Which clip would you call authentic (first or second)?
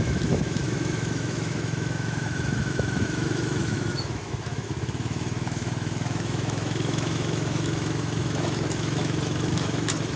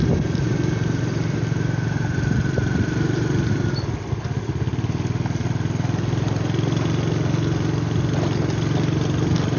second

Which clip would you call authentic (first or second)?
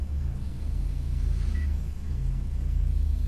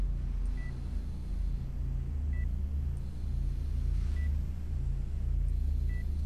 second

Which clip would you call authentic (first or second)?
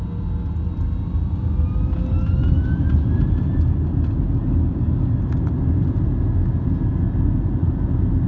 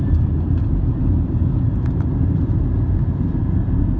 first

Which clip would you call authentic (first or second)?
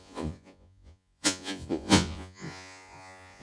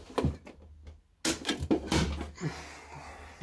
second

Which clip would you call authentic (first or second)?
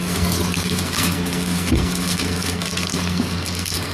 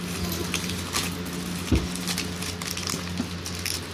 second